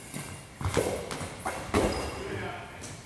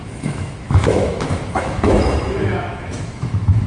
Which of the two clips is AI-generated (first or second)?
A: second